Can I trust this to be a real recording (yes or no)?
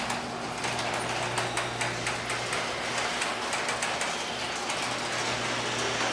yes